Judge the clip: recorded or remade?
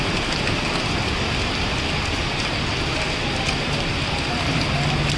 recorded